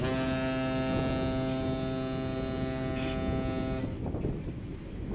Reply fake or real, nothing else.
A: real